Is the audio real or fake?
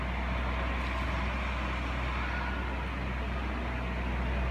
real